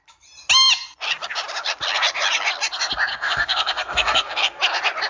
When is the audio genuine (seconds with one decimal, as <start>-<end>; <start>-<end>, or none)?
0.0-3.1; 4.6-5.1

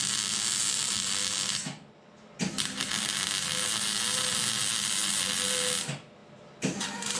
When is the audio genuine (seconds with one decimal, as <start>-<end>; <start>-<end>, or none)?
0.0-0.6; 1.3-3.7; 4.4-6.2